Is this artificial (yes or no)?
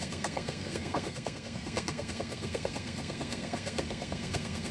yes